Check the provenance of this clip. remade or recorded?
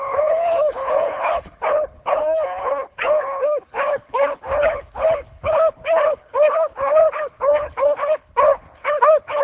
remade